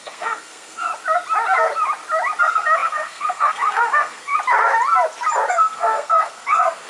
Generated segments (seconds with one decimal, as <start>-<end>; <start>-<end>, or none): 0.0-0.9; 2.4-4.3; 5.5-6.9